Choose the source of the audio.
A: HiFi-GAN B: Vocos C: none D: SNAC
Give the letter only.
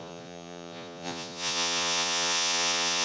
B